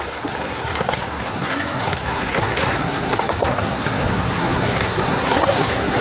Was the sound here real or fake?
fake